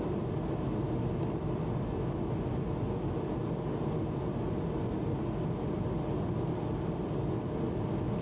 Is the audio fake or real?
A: real